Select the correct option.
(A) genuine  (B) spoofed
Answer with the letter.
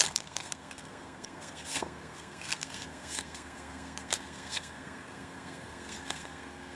B